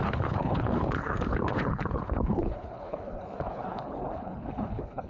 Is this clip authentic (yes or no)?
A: no